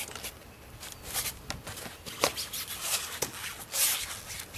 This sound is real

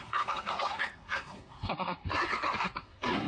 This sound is fake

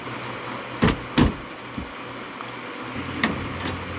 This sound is real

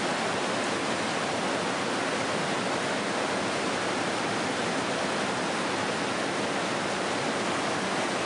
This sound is real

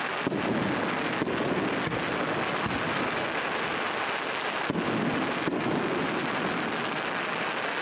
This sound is real